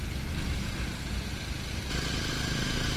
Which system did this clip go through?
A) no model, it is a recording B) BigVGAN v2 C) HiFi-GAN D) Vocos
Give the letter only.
A